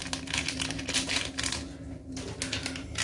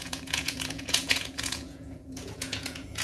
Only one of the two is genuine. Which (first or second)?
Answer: first